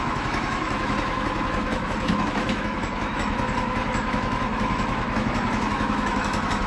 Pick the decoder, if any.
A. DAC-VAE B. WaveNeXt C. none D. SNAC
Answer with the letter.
A